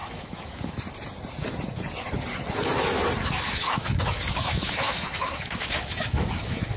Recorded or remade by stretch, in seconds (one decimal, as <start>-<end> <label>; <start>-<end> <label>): 0.0-0.8 remade; 0.8-3.2 recorded; 3.2-6.8 remade